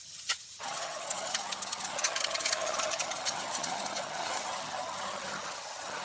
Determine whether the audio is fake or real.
fake